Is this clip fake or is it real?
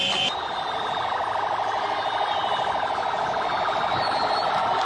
real